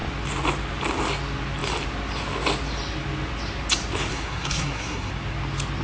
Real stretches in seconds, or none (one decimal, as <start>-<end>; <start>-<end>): 0.0-4.1; 5.1-5.8